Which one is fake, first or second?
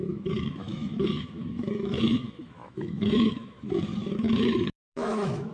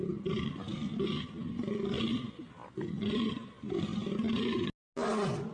first